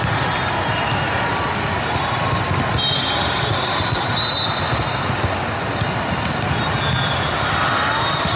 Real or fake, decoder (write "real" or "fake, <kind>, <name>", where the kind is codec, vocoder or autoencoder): real